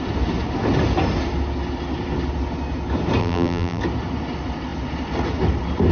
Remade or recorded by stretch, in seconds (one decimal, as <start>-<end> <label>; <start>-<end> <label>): 0.0-3.2 recorded; 3.2-3.8 remade; 3.8-5.9 recorded